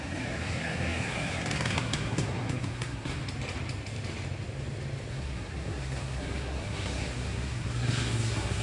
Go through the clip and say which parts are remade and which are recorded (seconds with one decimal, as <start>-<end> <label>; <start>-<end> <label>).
0.0-3.2 remade; 3.2-5.1 recorded; 5.1-8.6 remade